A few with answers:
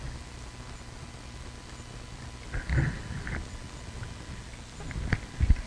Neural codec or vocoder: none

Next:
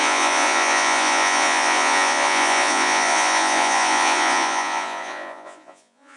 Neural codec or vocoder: vocoder, Vocos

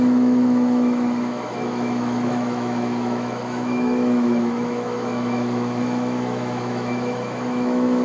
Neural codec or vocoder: autoencoder, DAC-VAE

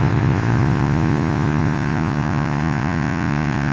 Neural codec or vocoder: vocoder, Vocos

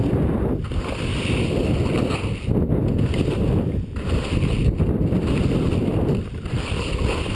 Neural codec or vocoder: none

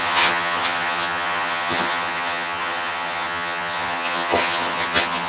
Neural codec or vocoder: vocoder, HiFi-GAN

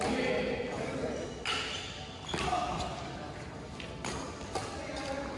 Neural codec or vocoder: none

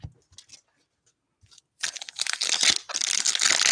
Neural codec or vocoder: none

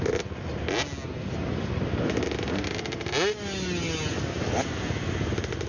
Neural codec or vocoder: none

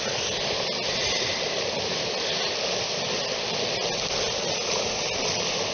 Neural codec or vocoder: none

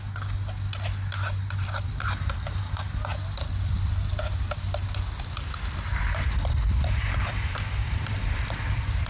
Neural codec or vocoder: none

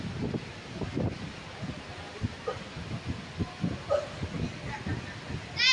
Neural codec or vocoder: none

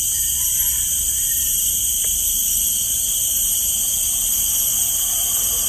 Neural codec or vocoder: none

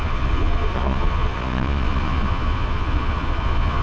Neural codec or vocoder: vocoder, Vocos